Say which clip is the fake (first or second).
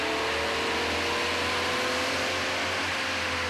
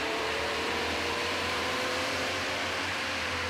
second